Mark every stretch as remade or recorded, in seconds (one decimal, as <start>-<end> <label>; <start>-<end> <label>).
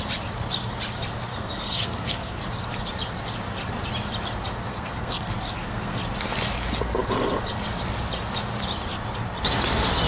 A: 0.0-1.3 recorded; 1.3-2.4 remade; 2.4-4.7 recorded; 4.7-6.0 remade; 6.0-10.1 recorded